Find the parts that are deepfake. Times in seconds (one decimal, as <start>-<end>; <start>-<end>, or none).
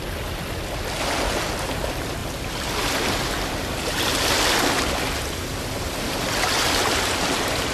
none